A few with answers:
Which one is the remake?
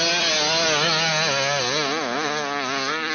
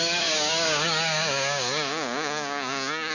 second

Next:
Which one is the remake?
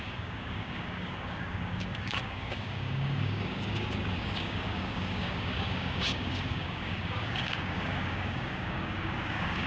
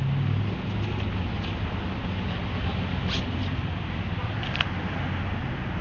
first